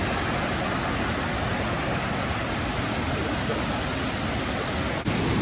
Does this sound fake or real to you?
real